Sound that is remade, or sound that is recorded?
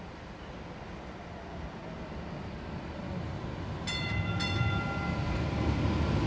recorded